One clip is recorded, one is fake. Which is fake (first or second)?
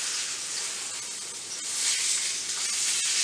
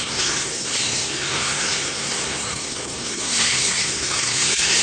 second